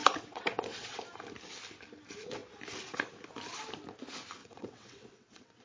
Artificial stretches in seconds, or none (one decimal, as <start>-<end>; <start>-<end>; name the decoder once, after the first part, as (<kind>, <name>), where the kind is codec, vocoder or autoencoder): 0.0-1.0 (vocoder, WaveNeXt); 4.4-5.6